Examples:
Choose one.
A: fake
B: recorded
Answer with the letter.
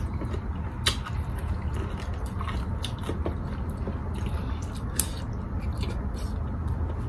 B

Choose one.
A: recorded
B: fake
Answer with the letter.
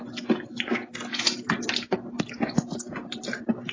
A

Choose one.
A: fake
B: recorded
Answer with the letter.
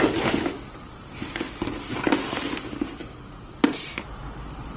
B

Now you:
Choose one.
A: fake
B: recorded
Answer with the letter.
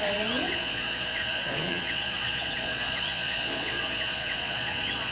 A